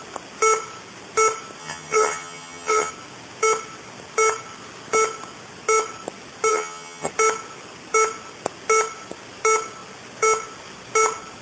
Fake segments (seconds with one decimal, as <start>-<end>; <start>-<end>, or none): 1.6-2.9; 6.5-7.1